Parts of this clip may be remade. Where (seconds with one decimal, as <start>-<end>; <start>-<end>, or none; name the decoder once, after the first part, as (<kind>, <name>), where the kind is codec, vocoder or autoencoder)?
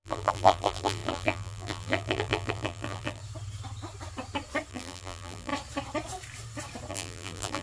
0.0-3.2 (vocoder, BigVGAN v2); 4.7-5.5; 6.9-7.6